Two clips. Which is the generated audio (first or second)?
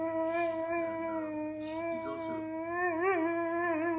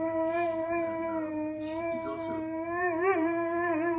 second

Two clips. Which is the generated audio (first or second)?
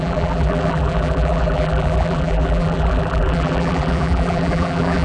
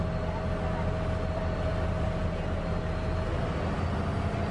first